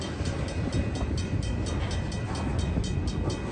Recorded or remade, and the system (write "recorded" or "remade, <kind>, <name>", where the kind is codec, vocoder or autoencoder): recorded